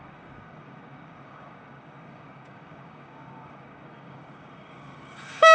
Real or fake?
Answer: fake